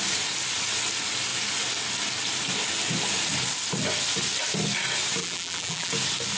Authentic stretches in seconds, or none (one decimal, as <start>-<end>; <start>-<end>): 0.0-5.2; 5.9-6.4